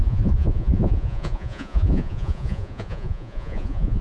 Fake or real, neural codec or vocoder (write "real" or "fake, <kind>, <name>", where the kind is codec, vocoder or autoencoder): fake, vocoder, Vocos